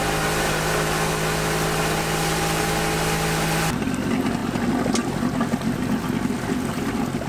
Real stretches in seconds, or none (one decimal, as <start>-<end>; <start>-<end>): 0.0-7.3